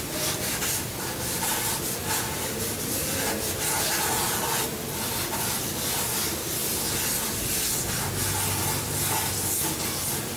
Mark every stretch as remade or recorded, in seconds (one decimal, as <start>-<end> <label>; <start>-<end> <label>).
0.0-10.4 recorded